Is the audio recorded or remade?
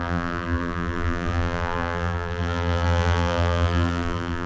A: remade